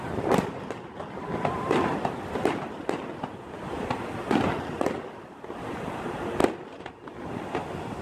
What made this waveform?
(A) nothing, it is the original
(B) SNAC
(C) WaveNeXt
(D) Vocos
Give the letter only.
A